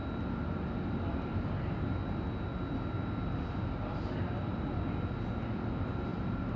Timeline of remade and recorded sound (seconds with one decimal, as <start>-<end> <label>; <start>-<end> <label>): 0.0-6.1 recorded; 6.1-6.6 remade